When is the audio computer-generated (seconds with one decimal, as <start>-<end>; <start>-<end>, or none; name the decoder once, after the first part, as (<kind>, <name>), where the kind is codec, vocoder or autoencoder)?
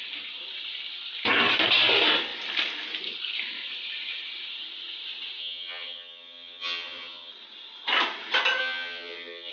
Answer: 5.4-7.3 (vocoder, HiFi-GAN); 8.6-9.5